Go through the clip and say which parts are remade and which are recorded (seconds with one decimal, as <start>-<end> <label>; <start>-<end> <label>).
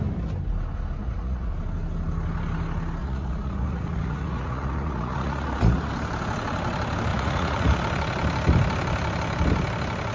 0.0-1.0 recorded; 1.0-1.5 remade; 1.5-3.0 recorded; 3.0-5.9 remade; 5.9-7.1 recorded; 7.1-7.8 remade; 7.8-10.1 recorded